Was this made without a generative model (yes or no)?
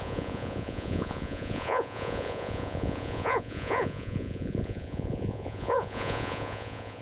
no